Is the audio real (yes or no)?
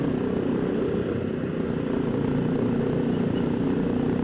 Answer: yes